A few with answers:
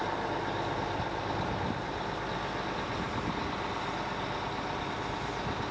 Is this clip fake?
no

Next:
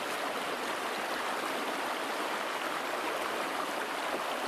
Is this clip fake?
no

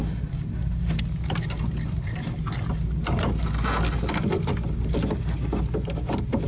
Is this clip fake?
no